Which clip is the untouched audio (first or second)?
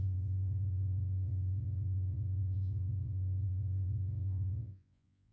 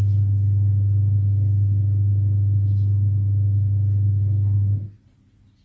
second